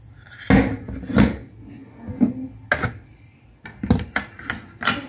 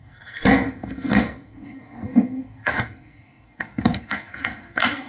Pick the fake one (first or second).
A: second